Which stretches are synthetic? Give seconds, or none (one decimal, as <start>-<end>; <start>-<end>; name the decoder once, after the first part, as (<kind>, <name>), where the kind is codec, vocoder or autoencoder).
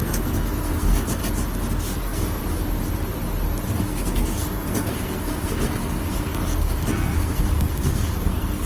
0.0-1.2 (codec, SNAC); 2.0-2.4; 3.8-8.7